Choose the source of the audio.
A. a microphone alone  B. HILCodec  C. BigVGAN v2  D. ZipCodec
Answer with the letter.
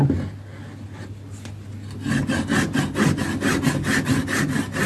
A